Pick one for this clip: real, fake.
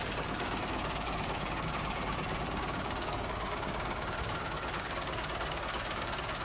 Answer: fake